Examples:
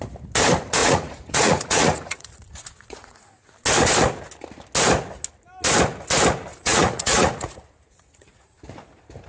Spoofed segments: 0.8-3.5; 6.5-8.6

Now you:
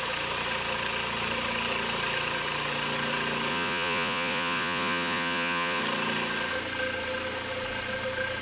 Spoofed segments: 3.5-5.8

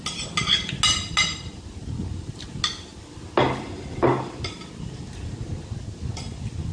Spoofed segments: none

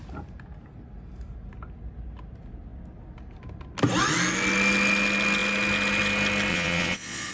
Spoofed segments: 6.5-7.3

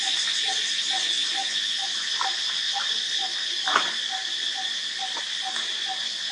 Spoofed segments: 1.4-2.1

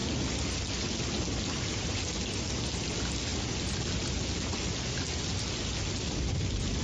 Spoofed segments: none

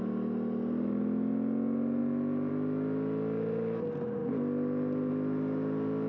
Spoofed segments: none